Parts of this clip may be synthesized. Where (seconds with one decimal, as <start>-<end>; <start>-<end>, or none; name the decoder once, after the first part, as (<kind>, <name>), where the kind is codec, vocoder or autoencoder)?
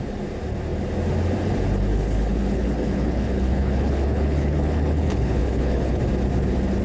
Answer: 1.9-6.0 (codec, HILCodec)